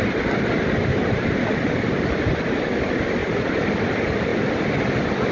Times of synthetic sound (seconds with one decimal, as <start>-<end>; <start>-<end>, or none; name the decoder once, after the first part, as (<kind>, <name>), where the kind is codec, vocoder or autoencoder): 0.9-1.6 (vocoder, BigVGAN v2); 3.2-3.7